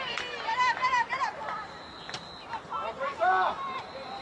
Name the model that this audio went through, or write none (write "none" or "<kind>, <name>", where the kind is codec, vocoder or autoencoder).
vocoder, BigVGAN v2